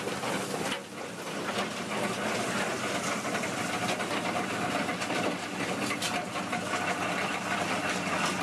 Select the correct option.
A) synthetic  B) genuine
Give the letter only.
B